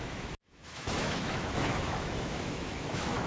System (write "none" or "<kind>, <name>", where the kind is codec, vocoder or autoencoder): autoencoder, DAC-VAE